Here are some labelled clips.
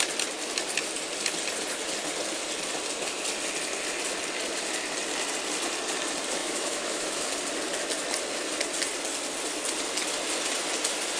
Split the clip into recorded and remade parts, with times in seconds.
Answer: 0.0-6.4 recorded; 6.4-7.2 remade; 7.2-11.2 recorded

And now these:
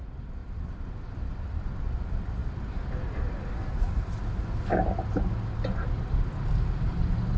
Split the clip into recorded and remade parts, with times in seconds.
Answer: 0.0-7.4 recorded

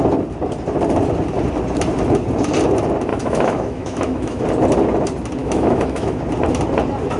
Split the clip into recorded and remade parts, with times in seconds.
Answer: 0.0-3.1 recorded; 3.1-4.4 remade; 4.4-5.4 recorded; 5.4-6.2 remade; 6.2-7.2 recorded

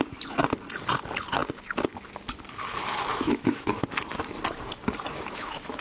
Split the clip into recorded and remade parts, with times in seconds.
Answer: 0.0-3.1 recorded; 3.1-3.8 remade; 3.8-5.1 recorded; 5.1-5.8 remade

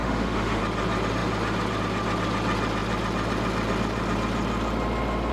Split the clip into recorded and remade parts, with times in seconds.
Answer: 0.0-0.6 remade; 0.6-5.3 recorded

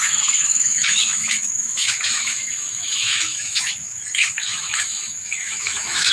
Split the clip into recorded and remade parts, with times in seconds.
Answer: 0.0-6.1 remade